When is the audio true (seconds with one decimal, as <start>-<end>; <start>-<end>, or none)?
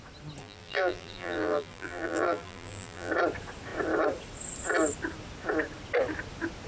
0.0-0.4; 3.1-6.7